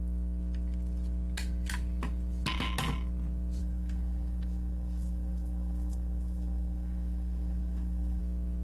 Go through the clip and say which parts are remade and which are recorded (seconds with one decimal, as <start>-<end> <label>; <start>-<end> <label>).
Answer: 0.0-3.6 recorded; 3.6-8.2 remade; 8.2-8.6 recorded

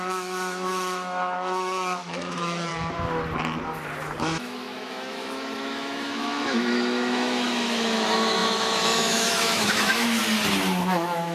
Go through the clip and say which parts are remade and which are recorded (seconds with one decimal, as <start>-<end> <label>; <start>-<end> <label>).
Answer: 0.0-2.7 remade; 2.7-4.2 recorded; 4.2-10.2 remade; 10.2-10.8 recorded; 10.8-11.3 remade

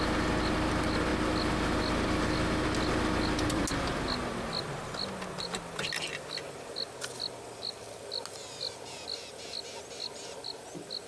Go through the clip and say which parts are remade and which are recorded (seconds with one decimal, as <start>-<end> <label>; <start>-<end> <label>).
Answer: 0.0-11.1 recorded

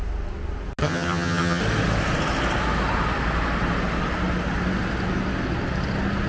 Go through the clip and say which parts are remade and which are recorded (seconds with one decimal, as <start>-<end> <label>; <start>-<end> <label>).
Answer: 0.0-0.8 recorded; 0.8-1.6 remade; 1.6-6.3 recorded

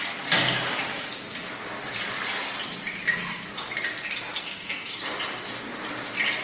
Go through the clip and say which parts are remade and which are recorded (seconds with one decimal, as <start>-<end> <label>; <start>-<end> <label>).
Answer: 0.0-4.4 recorded; 4.4-5.0 remade; 5.0-6.4 recorded

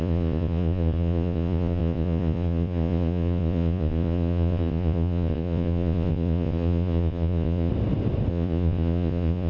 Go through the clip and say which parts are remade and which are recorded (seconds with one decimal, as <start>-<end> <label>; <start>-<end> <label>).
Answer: 0.0-7.7 remade; 7.7-8.3 recorded; 8.3-9.5 remade

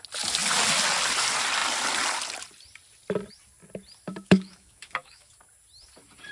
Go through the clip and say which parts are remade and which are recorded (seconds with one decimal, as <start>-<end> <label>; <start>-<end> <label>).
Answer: 0.0-4.1 recorded; 4.1-5.3 remade; 5.3-6.3 recorded

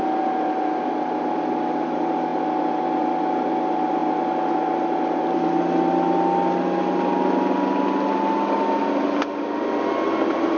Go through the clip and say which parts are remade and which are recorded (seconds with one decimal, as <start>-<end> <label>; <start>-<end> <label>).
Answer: 0.0-10.6 recorded